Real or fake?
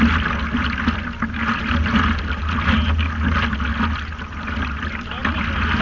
real